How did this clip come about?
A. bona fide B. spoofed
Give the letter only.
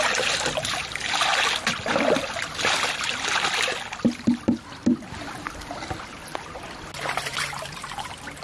A